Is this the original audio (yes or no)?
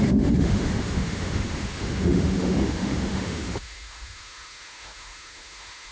no